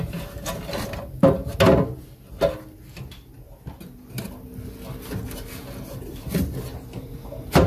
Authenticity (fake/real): real